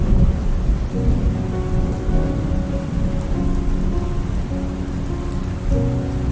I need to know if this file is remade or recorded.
recorded